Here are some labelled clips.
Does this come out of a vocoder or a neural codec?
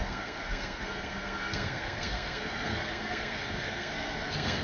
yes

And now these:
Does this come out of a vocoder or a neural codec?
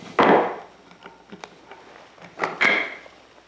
no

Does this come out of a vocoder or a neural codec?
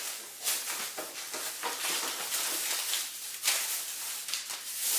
no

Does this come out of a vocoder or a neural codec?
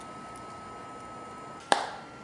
no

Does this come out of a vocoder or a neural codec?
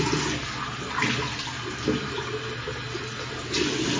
no